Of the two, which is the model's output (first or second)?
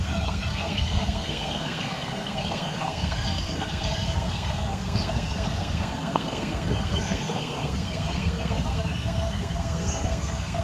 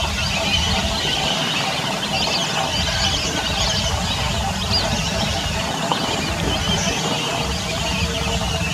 first